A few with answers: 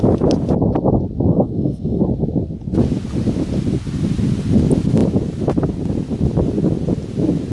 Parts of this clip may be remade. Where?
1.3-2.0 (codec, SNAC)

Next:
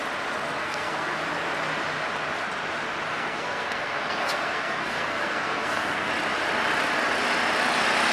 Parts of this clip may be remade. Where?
0.6-1.2 (codec, SNAC); 3.1-6.1

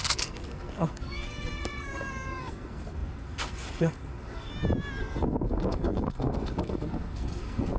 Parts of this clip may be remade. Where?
0.0-4.5 (codec, SNAC); 5.0-7.8

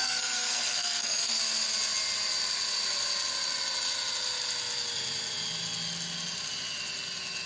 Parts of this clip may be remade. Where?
0.0-1.4 (codec, SNAC)